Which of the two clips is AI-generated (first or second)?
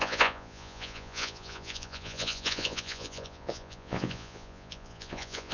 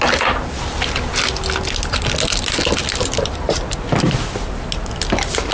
first